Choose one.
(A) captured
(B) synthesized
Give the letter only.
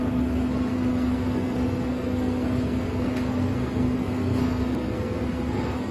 B